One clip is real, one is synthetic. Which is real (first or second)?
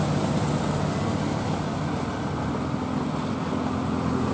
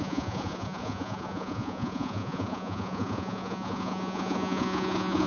first